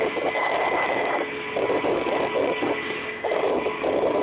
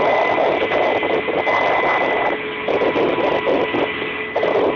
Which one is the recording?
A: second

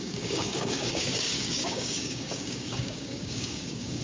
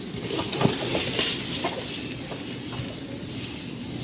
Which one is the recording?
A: second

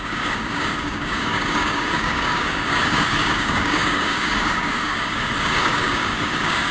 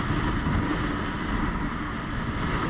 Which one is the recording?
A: second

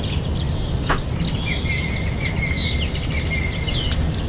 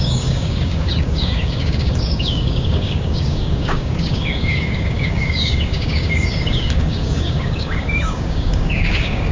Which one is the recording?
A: first